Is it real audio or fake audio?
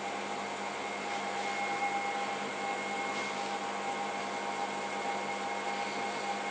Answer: real